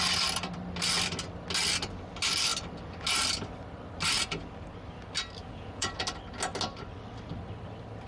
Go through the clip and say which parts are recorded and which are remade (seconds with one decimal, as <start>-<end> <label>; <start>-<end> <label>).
0.0-5.4 recorded; 5.4-5.9 remade; 5.9-8.1 recorded